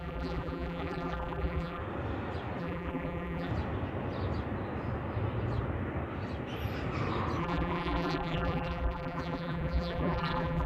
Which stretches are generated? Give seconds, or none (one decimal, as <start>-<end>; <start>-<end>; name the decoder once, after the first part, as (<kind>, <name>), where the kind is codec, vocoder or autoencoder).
0.0-1.8 (vocoder, BigVGAN v2); 2.6-3.5; 7.4-10.7